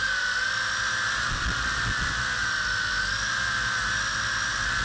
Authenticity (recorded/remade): recorded